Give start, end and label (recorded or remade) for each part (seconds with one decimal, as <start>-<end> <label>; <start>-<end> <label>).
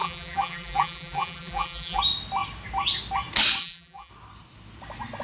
0.0-2.0 remade; 2.0-3.6 recorded; 3.6-4.1 remade; 4.1-5.2 recorded